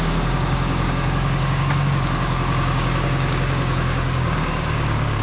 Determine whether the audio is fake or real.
fake